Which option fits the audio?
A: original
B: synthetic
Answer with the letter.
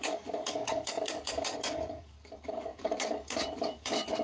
B